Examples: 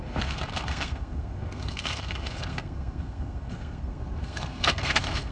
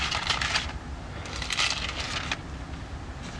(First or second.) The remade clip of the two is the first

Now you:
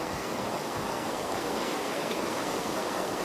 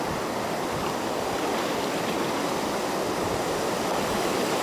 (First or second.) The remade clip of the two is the first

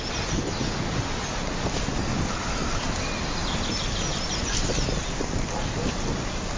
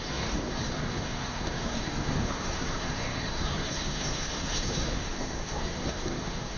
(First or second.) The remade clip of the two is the second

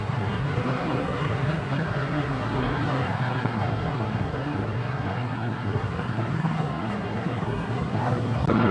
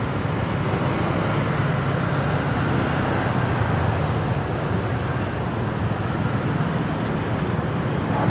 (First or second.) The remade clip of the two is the first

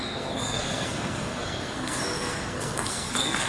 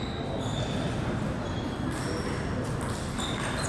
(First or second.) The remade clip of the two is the first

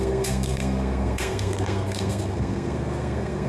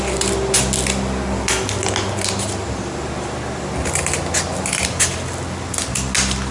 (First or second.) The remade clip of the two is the first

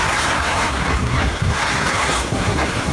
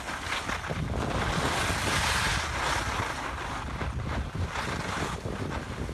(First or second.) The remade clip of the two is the first